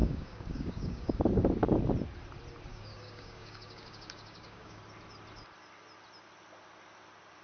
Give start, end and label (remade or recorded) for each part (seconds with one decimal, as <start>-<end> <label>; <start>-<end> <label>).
0.0-1.2 remade; 1.2-2.7 recorded; 2.7-4.8 remade; 4.8-7.4 recorded